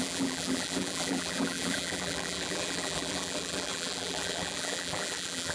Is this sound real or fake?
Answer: fake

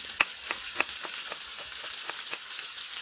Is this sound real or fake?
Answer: real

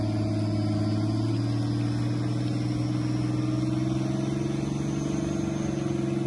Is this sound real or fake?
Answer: real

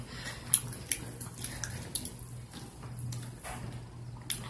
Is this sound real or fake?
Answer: real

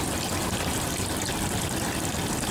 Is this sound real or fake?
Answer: real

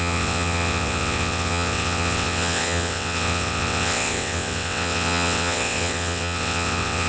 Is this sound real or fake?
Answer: fake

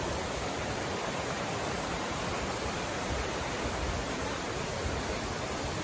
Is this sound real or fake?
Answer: real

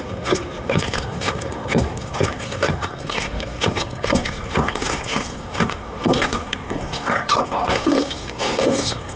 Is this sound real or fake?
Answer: fake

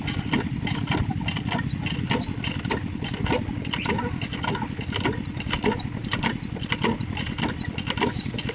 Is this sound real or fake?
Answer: real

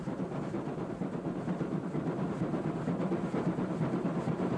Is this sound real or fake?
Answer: fake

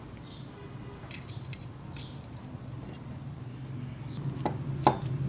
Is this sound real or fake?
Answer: real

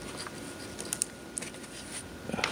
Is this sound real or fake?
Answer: real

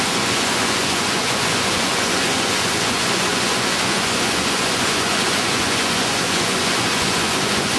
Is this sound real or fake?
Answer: fake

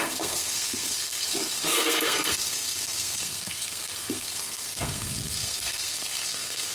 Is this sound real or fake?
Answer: fake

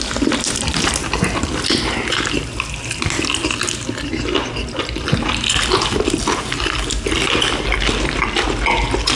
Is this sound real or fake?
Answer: real